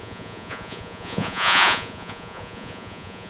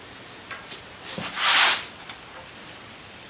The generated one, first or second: first